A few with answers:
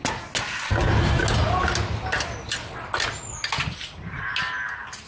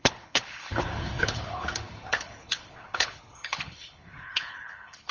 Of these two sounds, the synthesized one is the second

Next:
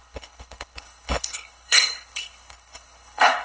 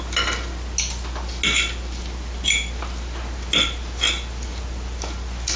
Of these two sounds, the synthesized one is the first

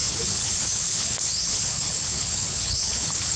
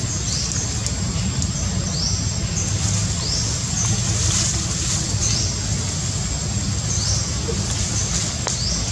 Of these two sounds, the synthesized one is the first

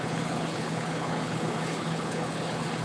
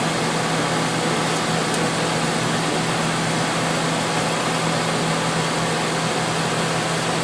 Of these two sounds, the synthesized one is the first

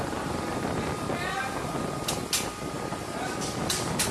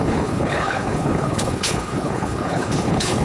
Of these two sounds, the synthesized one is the second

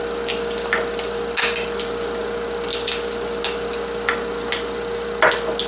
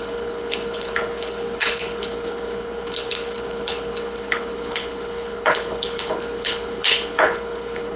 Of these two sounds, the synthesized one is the second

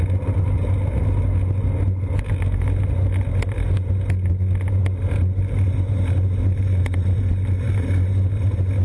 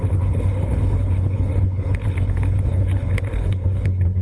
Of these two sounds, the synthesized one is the second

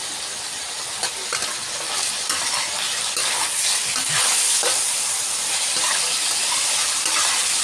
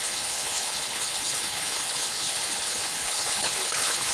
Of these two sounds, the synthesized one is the second